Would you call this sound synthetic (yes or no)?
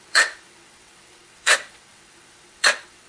yes